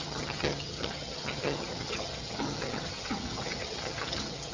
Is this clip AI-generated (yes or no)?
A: yes